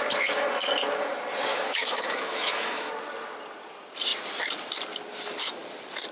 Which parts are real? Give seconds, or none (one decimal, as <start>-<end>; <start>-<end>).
0.0-1.5; 2.9-6.1